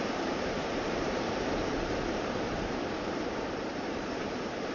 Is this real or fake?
fake